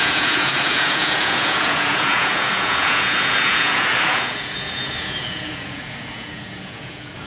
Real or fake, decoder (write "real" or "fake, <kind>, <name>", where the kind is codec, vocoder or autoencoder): fake, vocoder, Vocos